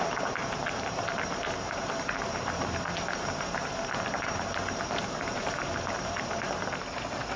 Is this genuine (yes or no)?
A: no